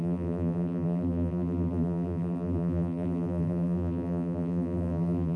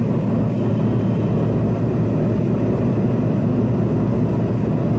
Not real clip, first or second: first